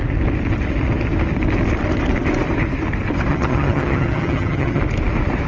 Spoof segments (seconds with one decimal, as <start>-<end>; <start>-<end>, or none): 3.3-4.8